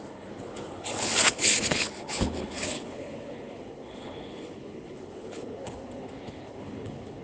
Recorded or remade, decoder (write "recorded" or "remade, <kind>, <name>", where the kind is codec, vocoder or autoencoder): remade, codec, HILCodec